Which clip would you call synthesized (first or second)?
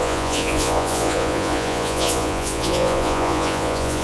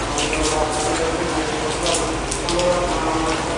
first